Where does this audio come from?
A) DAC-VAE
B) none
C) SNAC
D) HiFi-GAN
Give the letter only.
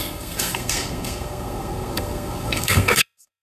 C